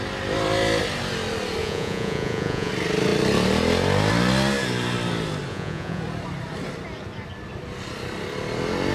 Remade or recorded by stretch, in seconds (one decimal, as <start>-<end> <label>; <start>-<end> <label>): 0.0-1.6 recorded; 1.6-2.7 remade; 2.7-5.5 recorded; 5.5-6.0 remade; 6.0-8.9 recorded